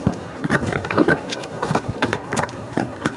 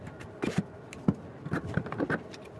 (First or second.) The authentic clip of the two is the second